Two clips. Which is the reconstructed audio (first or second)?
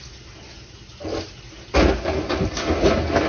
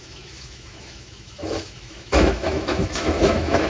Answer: second